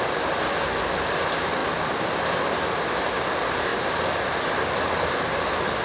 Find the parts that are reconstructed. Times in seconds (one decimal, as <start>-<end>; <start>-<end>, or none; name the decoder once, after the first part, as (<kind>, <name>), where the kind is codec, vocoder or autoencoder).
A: none